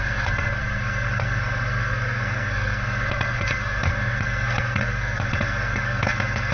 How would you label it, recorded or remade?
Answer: remade